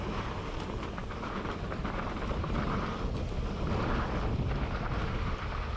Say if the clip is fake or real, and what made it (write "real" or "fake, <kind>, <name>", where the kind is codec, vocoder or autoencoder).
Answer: real